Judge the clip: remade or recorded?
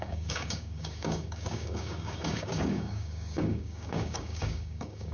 remade